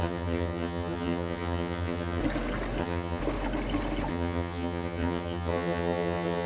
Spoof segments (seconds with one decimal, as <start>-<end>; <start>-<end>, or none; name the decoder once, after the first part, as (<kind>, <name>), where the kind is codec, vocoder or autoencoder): 0.0-2.2 (vocoder, HiFi-GAN); 2.8-3.2; 4.1-6.5